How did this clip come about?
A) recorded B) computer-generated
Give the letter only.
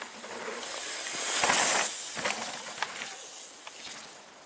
A